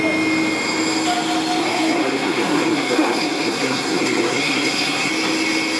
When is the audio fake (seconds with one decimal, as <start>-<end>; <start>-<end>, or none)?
1.6-5.1